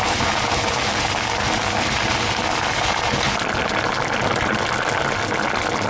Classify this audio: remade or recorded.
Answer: recorded